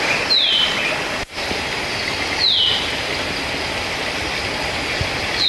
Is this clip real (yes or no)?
yes